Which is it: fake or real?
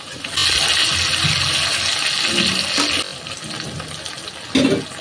real